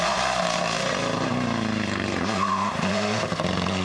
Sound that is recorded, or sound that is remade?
recorded